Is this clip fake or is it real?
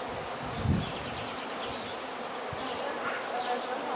real